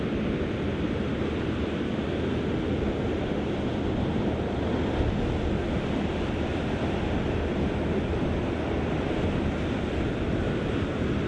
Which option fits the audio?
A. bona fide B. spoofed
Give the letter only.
A